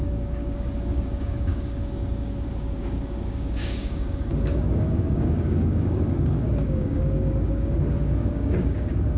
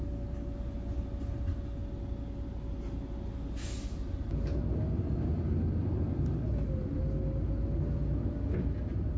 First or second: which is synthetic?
first